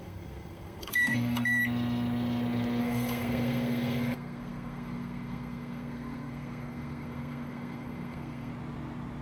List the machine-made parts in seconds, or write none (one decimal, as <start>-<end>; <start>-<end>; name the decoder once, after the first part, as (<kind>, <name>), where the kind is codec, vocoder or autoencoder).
0.0-1.6 (codec, SNAC); 2.8-8.5